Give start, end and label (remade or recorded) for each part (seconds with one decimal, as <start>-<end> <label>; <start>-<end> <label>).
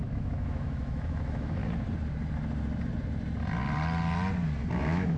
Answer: 0.0-1.6 remade; 1.6-4.7 recorded; 4.7-5.2 remade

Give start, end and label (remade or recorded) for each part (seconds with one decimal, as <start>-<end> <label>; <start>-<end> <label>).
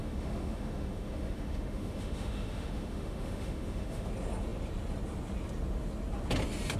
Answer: 0.0-4.1 remade; 4.1-6.8 recorded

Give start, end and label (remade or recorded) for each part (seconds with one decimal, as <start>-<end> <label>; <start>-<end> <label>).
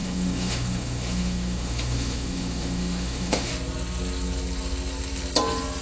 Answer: 0.0-3.5 remade; 3.5-5.8 recorded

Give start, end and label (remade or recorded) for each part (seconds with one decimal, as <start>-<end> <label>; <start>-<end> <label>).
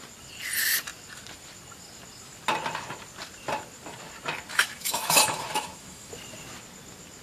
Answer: 0.0-4.5 recorded; 4.5-6.1 remade; 6.1-7.2 recorded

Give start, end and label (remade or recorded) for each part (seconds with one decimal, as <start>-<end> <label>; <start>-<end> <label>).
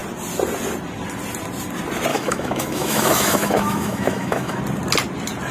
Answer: 0.0-2.1 recorded; 2.1-4.6 remade; 4.6-5.5 recorded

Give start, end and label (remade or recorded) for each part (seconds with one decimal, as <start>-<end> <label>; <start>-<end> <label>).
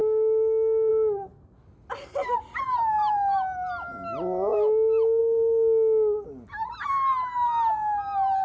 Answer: 0.0-0.9 remade; 0.9-4.5 recorded; 4.5-5.2 remade; 5.2-8.4 recorded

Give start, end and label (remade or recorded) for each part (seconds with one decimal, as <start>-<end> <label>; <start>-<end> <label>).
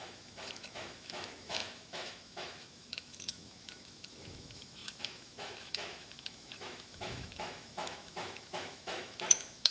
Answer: 0.0-9.7 remade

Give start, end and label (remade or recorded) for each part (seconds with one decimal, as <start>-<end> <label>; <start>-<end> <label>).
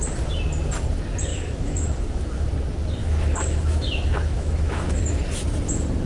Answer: 0.0-1.3 recorded; 1.3-2.5 remade; 2.5-3.0 recorded; 3.0-5.0 remade; 5.0-6.1 recorded